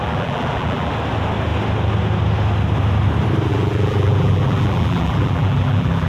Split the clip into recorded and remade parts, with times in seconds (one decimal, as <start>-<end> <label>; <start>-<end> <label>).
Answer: 0.0-0.9 remade; 0.9-3.5 recorded; 3.5-6.1 remade